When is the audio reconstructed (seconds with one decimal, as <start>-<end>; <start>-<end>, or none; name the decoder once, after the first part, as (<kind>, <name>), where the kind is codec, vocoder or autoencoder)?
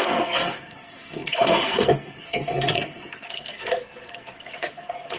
0.0-5.2 (codec, SNAC)